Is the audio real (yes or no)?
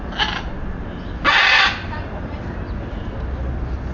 yes